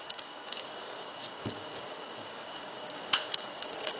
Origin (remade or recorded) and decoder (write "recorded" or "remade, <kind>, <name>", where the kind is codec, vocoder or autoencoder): remade, codec, DAC